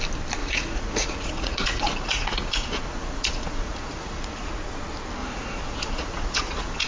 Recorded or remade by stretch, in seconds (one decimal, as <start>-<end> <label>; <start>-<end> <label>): 0.0-0.4 recorded; 0.4-4.5 remade; 4.5-5.2 recorded; 5.2-6.9 remade